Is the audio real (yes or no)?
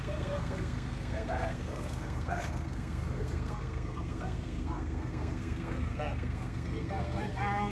no